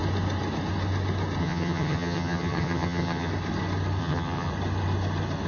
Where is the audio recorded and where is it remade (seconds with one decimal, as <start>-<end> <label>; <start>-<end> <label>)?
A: 0.0-1.4 recorded; 1.4-3.3 remade; 3.3-4.0 recorded; 4.0-4.5 remade; 4.5-5.5 recorded